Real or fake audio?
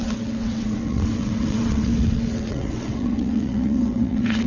fake